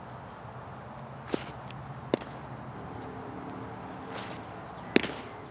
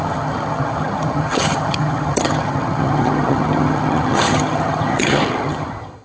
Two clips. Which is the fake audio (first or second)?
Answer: second